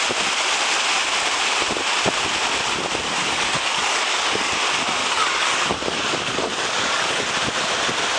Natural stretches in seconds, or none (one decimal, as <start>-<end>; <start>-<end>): 0.0-3.2; 4.6-5.0; 7.3-8.2